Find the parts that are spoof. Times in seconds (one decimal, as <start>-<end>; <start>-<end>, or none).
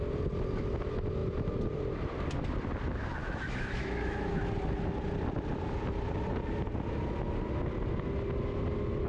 3.2-4.4